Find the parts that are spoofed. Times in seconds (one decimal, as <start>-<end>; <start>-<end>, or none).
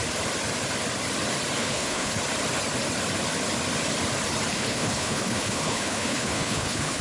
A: 1.6-2.2; 4.5-7.0